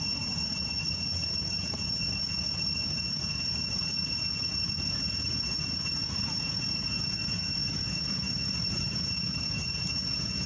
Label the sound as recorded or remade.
remade